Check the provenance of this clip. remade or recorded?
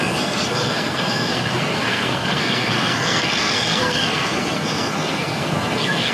remade